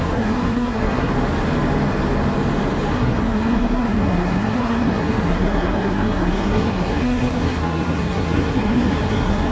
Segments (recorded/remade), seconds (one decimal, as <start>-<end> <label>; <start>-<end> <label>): 0.0-1.1 remade; 1.1-2.9 recorded; 2.9-9.5 remade